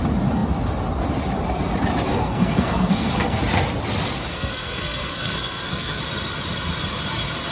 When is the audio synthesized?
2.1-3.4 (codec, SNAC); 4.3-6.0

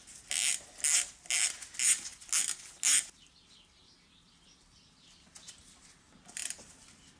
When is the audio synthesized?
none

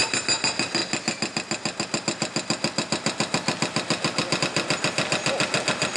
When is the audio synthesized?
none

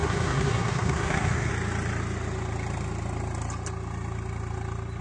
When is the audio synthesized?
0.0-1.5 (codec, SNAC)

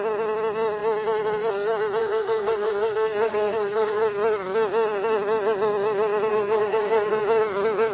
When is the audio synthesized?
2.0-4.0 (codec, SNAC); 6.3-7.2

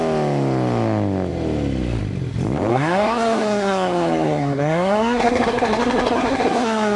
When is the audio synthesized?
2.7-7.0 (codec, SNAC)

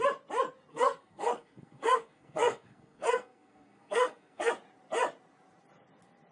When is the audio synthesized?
0.7-4.5 (codec, SNAC)